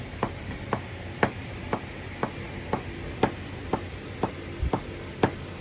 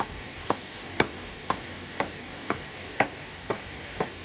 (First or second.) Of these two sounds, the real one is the first